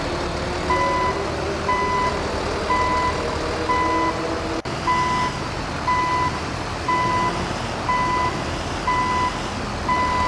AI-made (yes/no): no